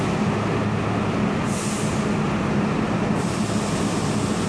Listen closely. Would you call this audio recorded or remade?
recorded